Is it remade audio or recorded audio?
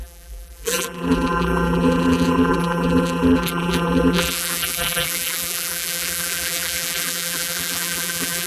remade